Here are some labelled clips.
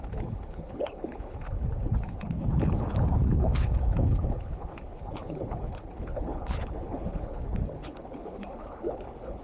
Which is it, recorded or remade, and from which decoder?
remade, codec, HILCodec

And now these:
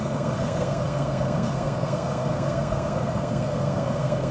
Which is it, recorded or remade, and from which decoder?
remade, codec, SNAC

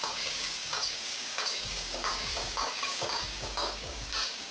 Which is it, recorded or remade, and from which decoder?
remade, codec, DAC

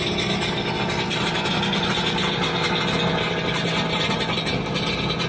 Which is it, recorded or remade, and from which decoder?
recorded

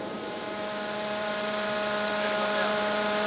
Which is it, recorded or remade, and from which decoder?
remade, vocoder, BigVGAN v2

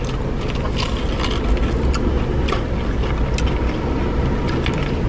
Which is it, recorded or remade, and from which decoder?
recorded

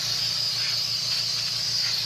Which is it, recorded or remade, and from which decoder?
recorded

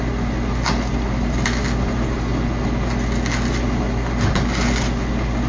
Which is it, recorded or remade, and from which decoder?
recorded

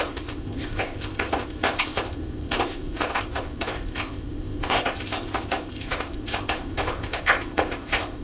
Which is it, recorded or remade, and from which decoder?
remade, codec, ZipCodec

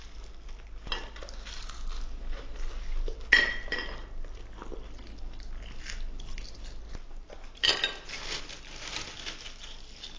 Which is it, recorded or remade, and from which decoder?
recorded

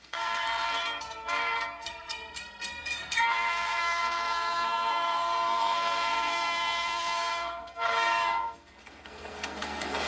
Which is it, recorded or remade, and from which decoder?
remade, codec, SNAC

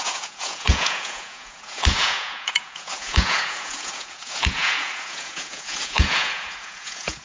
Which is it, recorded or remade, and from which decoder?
remade, vocoder, Vocos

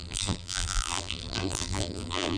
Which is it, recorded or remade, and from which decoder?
remade, vocoder, BigVGAN v2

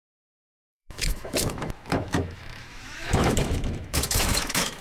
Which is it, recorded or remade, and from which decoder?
remade, autoencoder, DAC-VAE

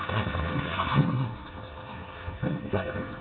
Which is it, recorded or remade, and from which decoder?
remade, codec, SNAC